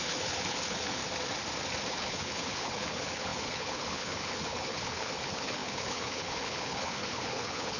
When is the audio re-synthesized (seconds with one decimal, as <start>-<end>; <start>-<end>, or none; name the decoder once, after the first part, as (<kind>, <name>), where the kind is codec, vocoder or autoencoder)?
0.0-1.0 (codec, HILCodec); 1.9-7.8